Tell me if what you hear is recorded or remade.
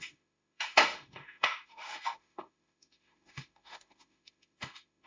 remade